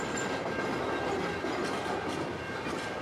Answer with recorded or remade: recorded